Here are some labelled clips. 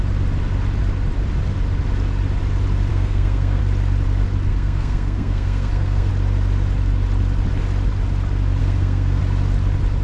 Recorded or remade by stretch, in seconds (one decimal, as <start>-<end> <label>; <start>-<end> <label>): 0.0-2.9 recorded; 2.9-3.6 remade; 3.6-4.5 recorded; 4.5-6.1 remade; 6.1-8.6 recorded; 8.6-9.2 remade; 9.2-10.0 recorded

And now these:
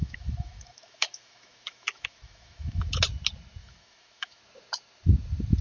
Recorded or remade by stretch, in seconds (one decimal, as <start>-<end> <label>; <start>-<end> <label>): 0.0-3.0 remade; 3.0-3.6 recorded; 3.6-4.4 remade; 4.4-5.6 recorded

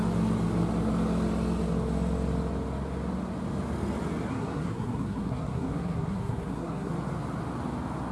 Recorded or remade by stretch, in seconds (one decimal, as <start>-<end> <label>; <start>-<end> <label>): 0.0-4.3 recorded; 4.3-6.9 remade; 6.9-8.1 recorded

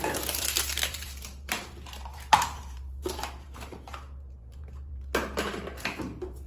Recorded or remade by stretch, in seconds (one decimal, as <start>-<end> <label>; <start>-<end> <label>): 0.0-6.5 remade

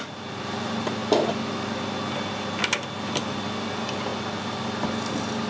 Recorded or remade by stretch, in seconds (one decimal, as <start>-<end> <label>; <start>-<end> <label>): 0.0-5.5 recorded